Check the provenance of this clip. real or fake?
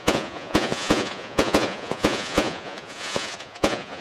fake